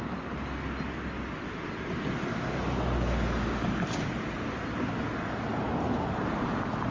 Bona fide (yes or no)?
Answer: yes